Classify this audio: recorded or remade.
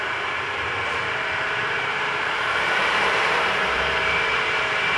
remade